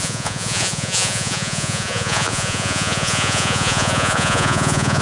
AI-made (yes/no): yes